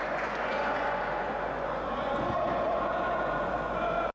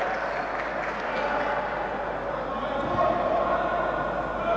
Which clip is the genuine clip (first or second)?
second